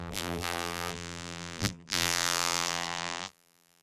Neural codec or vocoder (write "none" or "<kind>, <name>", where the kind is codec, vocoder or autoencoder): vocoder, BigVGAN v2